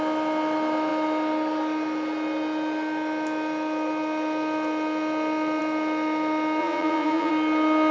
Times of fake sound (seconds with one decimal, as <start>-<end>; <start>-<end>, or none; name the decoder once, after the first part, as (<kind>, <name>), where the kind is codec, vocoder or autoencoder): 6.6-7.3 (vocoder, Vocos)